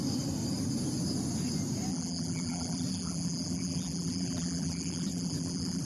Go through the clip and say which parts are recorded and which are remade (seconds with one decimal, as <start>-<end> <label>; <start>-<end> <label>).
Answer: 0.0-1.9 recorded; 1.9-5.8 remade